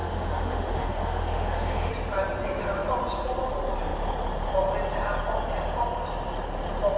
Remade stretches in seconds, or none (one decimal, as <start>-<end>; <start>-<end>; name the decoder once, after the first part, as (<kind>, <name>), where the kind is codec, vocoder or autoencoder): 0.0-1.9 (autoencoder, DAC-VAE)